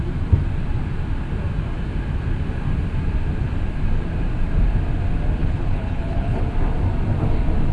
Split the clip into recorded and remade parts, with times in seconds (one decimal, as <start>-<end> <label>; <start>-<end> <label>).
0.0-5.4 recorded; 5.4-6.4 remade; 6.4-7.7 recorded